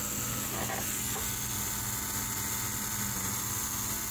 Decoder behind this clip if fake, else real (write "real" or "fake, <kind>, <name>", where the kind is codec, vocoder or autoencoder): real